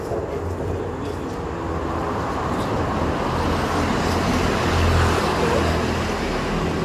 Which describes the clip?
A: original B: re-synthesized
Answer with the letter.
A